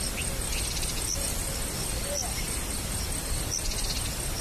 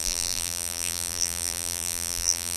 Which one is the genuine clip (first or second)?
first